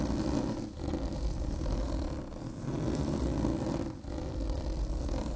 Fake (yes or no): no